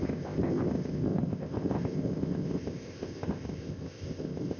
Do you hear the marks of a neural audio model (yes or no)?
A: yes